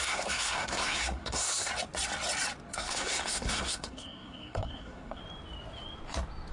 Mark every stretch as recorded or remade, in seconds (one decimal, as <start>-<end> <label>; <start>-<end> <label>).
0.0-1.7 remade; 1.7-2.7 recorded; 2.7-5.2 remade; 5.2-6.5 recorded